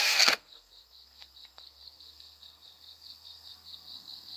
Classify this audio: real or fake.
fake